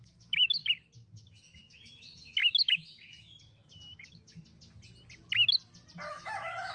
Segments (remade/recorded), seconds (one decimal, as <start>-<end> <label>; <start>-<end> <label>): 0.0-0.6 remade; 0.6-1.1 recorded; 1.1-4.4 remade; 4.4-6.1 recorded; 6.1-6.7 remade